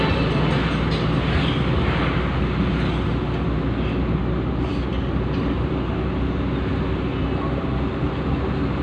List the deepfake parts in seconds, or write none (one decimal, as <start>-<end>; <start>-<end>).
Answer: none